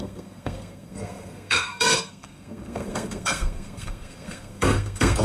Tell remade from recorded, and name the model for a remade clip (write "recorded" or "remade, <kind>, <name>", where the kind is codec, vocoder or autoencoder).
remade, codec, SNAC